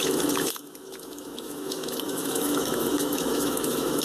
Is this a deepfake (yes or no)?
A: yes